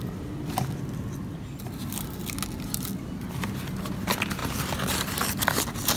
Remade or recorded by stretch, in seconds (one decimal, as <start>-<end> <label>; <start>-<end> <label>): 0.0-6.0 recorded